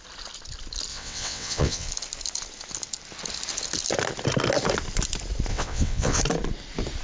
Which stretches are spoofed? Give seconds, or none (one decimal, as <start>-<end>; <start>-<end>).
0.9-1.9; 5.5-6.2